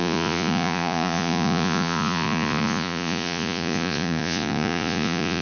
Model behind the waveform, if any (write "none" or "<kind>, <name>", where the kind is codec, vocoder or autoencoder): vocoder, Vocos